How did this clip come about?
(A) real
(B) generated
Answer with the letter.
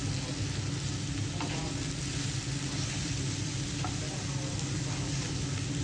A